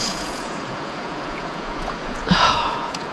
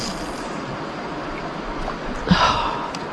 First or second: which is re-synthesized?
first